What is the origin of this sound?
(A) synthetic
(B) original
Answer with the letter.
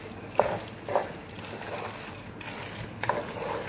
B